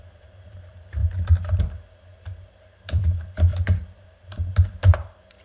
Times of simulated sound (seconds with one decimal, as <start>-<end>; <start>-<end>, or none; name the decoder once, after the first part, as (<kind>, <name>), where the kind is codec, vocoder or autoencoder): 0.0-1.0 (vocoder, BigVGAN v2); 1.6-5.4